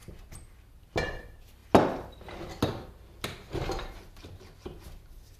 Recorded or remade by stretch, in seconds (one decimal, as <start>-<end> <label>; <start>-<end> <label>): 0.0-5.4 recorded